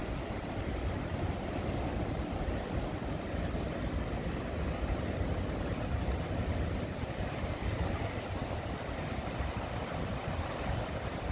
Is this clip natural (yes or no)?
yes